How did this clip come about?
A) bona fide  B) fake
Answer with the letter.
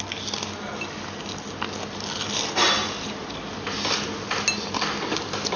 A